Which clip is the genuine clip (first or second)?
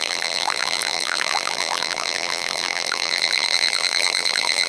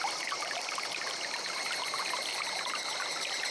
second